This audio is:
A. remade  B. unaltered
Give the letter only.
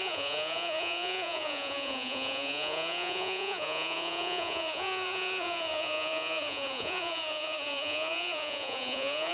A